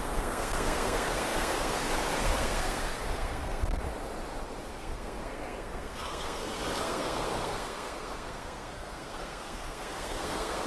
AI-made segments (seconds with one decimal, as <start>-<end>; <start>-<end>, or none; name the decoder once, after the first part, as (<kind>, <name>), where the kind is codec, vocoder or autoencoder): 0.0-3.8 (codec, SNAC); 4.7-10.7